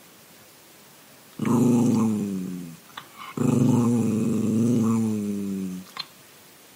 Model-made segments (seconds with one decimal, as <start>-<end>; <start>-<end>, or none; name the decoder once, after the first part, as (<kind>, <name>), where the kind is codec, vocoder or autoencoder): none